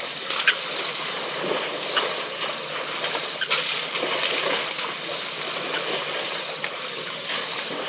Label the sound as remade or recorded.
recorded